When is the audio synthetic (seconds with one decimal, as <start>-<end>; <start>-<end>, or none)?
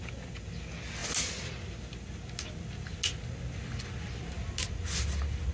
none